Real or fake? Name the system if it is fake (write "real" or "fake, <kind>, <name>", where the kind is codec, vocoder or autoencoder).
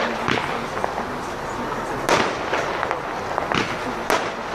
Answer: real